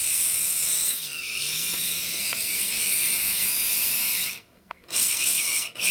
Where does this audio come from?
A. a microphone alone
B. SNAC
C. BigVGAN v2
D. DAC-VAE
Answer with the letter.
B